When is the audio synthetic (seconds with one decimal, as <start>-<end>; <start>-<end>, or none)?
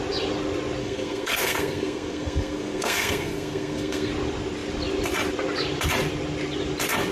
0.8-4.1